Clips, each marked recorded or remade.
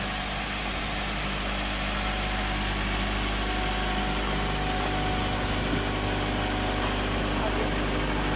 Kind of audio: recorded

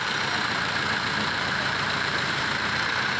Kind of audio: remade